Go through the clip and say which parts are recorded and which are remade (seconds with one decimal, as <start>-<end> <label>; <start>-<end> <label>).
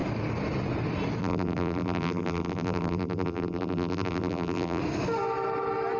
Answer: 0.0-1.2 recorded; 1.2-4.8 remade; 4.8-6.0 recorded